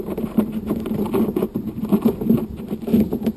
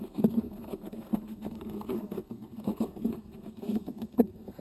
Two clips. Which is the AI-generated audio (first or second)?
second